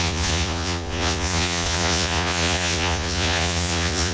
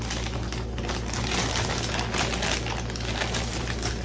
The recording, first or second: second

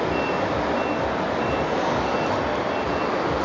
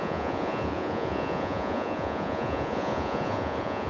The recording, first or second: first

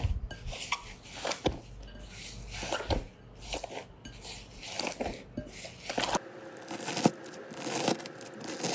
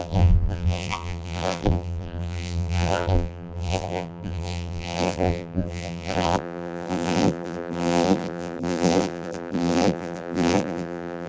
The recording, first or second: first